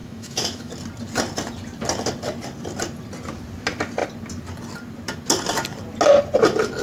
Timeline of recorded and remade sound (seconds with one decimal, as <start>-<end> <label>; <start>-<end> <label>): 0.0-0.7 remade; 0.7-6.8 recorded